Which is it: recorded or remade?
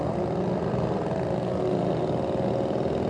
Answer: recorded